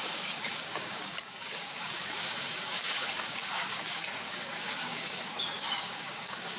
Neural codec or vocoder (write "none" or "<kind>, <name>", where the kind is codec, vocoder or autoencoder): codec, DAC